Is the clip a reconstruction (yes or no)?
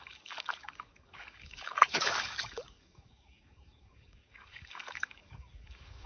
yes